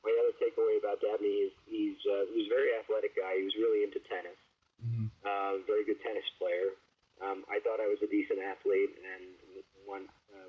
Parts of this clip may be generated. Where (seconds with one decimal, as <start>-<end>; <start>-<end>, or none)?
none